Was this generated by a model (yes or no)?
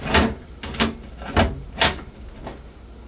no